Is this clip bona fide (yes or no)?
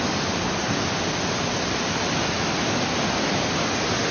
yes